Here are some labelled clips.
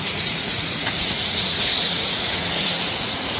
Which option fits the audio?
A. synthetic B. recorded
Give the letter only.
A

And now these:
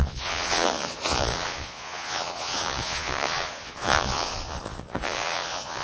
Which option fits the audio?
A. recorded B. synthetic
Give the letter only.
B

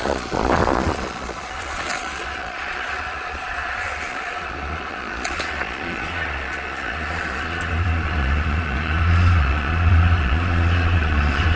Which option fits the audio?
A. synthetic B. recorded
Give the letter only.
A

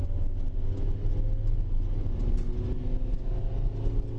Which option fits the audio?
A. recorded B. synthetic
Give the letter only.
A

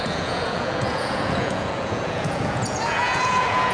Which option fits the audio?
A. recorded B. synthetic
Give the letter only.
B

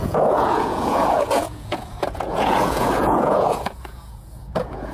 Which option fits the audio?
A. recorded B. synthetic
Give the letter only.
B